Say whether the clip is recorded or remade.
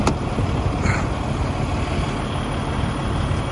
recorded